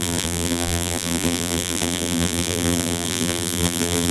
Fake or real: fake